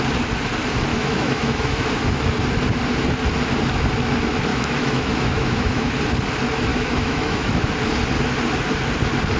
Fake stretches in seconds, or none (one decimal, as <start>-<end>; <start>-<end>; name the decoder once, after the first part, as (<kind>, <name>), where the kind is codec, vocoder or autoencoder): 0.9-1.9 (autoencoder, DAC-VAE); 4.5-5.9; 6.7-7.7